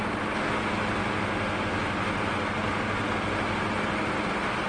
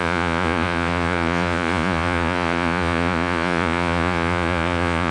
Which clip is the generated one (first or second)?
second